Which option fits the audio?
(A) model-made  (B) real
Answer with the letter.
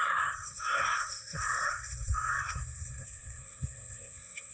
A